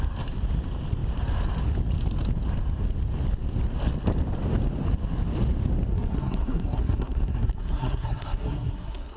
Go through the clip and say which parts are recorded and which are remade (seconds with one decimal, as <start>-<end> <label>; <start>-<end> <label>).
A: 0.0-5.9 recorded; 5.9-9.2 remade

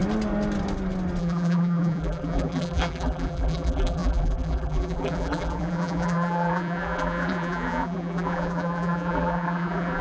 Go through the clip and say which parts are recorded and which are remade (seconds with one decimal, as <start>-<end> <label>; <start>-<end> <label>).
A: 0.0-1.2 recorded; 1.2-10.0 remade

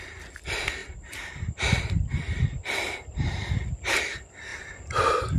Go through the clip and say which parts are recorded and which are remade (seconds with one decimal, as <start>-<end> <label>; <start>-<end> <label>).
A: 0.0-5.4 recorded

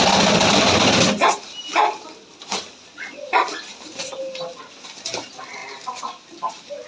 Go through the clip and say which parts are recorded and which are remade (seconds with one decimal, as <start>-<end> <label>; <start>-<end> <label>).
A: 0.0-6.9 recorded

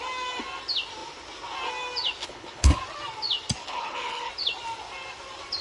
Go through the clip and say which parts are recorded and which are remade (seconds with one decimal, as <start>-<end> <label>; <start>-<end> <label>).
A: 0.0-2.2 recorded; 2.2-2.8 remade; 2.8-3.6 recorded; 3.6-4.3 remade; 4.3-5.6 recorded

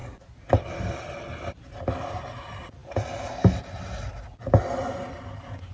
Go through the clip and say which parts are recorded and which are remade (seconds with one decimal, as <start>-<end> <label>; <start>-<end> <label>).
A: 0.0-5.7 recorded

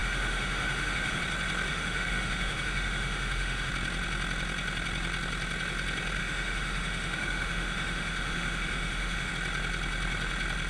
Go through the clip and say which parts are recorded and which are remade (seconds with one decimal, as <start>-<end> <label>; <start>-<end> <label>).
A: 0.0-1.2 remade; 1.2-1.7 recorded; 1.7-3.7 remade; 3.7-6.2 recorded; 6.2-9.3 remade; 9.3-10.7 recorded